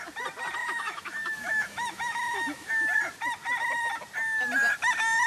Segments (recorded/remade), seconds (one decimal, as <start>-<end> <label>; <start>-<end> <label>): 0.0-0.6 recorded; 0.6-2.7 remade; 2.7-5.3 recorded